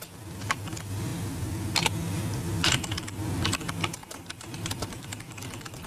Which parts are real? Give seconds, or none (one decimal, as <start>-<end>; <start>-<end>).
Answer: 0.0-4.0; 5.2-5.9

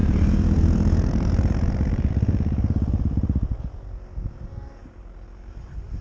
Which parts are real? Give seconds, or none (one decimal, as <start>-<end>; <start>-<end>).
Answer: 3.6-4.8

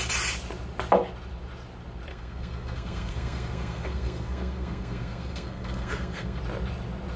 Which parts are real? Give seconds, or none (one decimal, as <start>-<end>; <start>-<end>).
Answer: 0.0-2.1; 6.4-7.2

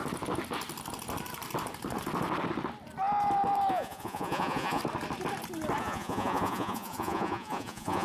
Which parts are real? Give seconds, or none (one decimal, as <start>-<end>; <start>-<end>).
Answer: 0.0-3.7; 4.8-5.8

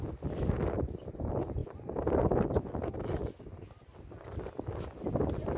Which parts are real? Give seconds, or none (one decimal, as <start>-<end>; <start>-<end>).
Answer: 0.0-5.6

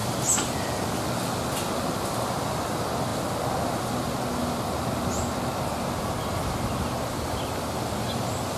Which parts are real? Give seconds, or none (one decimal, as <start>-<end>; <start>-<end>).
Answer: 0.0-8.6

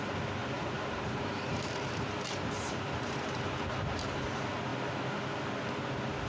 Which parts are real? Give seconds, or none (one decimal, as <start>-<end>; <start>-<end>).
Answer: 0.0-0.4; 4.2-6.3

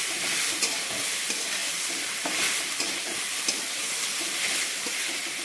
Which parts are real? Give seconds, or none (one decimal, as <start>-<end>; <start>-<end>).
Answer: 0.0-5.4